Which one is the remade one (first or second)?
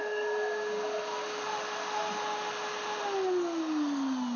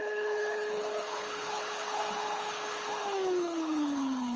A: second